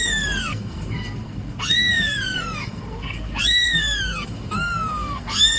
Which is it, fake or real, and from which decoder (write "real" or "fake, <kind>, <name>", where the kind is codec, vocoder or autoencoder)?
fake, codec, SNAC